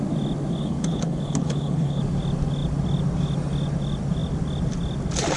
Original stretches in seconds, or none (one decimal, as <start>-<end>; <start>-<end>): 0.0-0.6; 2.0-5.4

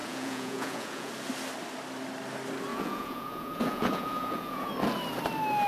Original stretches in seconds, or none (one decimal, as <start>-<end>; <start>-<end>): 1.1-2.7; 4.7-5.7

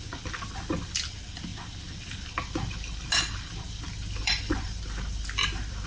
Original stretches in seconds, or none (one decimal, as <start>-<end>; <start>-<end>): 0.0-4.2; 4.8-5.9

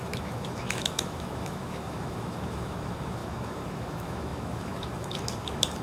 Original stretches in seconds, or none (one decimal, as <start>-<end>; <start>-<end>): none

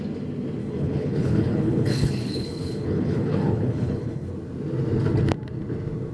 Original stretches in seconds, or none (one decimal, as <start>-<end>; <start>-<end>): 0.0-0.6; 4.3-6.1

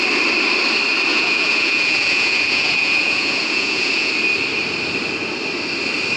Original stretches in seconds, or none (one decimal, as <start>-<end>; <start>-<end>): 0.0-1.1; 4.1-6.2

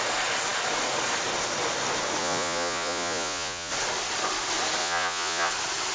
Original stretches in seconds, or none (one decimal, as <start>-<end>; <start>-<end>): 0.0-2.2; 3.7-4.8; 5.5-5.9

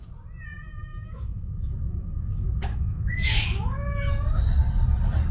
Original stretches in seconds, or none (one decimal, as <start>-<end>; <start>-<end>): 0.0-0.9; 4.1-5.3